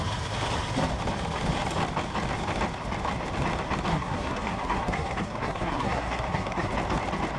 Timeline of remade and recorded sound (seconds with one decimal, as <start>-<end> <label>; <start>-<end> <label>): 0.0-3.9 recorded; 3.9-6.7 remade; 6.7-7.4 recorded